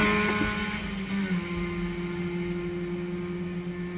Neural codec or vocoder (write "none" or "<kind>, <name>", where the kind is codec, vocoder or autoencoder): none